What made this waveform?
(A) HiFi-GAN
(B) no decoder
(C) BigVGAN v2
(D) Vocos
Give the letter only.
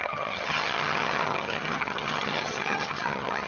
A